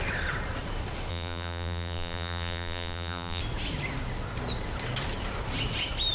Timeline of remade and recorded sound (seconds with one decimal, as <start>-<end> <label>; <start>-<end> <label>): 0.0-1.1 recorded; 1.1-3.4 remade; 3.4-6.1 recorded